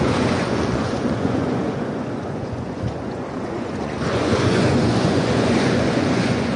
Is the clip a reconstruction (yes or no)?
yes